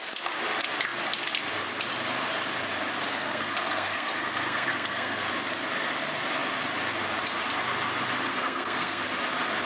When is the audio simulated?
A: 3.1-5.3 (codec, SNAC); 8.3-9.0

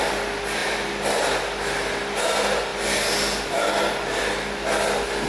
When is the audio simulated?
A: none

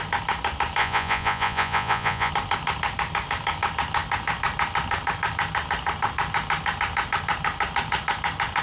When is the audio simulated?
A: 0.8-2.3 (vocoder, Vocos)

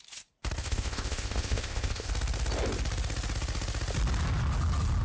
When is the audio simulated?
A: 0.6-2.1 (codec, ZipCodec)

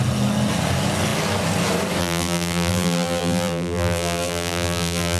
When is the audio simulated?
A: 2.0-5.2 (vocoder, BigVGAN v2)

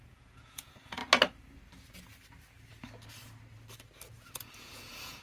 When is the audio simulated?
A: 0.0-1.0 (vocoder, Vocos); 4.1-5.2

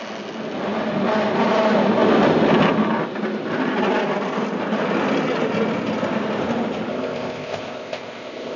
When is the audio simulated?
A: 6.9-8.6 (codec, ZipCodec)

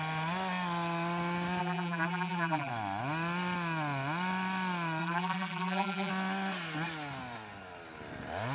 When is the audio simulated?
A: 1.6-2.7 (vocoder, BigVGAN v2); 5.0-6.1